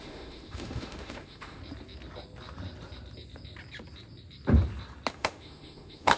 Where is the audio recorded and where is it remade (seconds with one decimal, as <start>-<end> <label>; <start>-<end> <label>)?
0.0-1.6 remade; 1.6-5.1 recorded; 5.1-6.2 remade